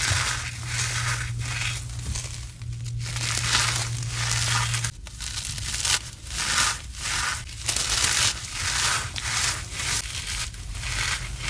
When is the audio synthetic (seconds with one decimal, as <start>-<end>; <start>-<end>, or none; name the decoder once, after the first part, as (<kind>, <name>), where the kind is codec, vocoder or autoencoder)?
none